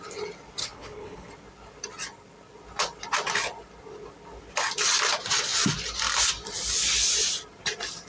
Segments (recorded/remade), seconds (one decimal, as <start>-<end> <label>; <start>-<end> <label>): 0.0-0.6 recorded; 0.6-1.3 remade; 1.3-8.1 recorded